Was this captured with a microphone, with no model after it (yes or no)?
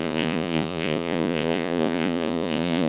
no